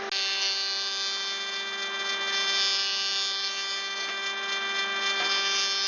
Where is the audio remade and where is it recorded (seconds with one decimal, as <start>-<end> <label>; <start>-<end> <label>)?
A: 0.0-5.9 recorded